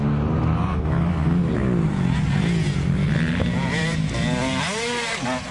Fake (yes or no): no